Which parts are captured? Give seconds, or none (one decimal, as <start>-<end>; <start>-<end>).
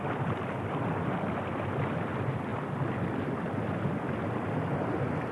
0.0-5.3